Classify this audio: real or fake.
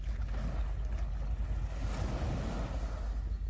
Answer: real